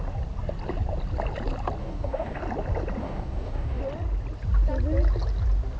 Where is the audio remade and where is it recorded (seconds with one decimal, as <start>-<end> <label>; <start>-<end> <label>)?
0.0-1.8 recorded; 1.8-2.4 remade; 2.4-3.0 recorded; 3.0-3.8 remade; 3.8-5.8 recorded